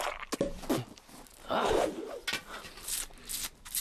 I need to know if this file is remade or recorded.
recorded